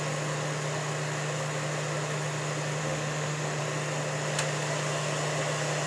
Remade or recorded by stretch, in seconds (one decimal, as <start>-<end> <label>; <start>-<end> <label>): 0.0-2.8 recorded; 2.8-3.6 remade; 3.6-5.9 recorded